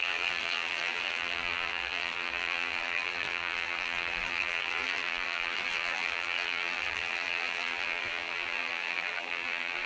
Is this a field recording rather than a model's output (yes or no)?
no